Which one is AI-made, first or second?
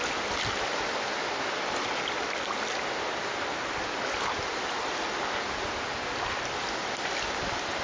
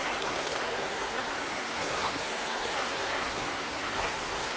second